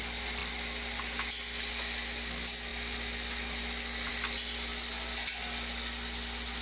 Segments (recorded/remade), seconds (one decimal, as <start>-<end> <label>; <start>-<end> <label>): 0.0-6.6 recorded